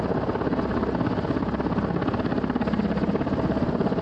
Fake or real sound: real